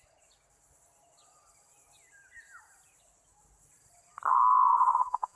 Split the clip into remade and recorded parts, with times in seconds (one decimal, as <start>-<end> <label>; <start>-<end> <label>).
0.0-4.5 recorded; 4.5-5.4 remade